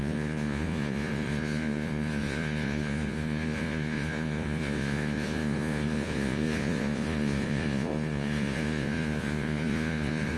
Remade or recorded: remade